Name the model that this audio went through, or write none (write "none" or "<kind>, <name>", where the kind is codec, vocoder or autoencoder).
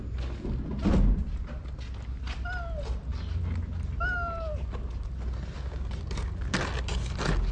none